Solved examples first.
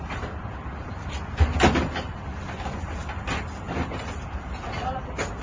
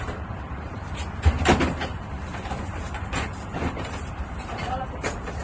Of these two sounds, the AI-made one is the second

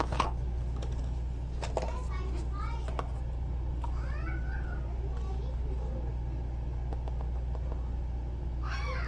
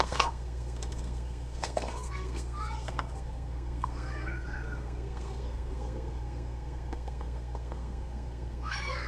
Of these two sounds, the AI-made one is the second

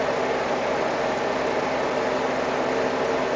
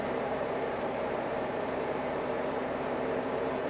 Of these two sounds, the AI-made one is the second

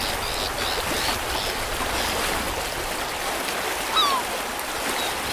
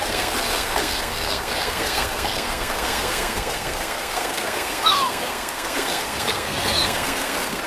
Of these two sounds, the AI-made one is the second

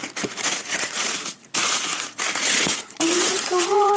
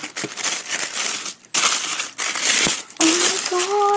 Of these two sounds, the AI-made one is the first